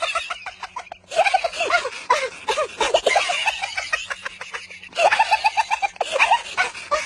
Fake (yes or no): no